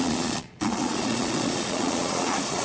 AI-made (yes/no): yes